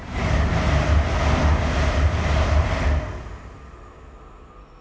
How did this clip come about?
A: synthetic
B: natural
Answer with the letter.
B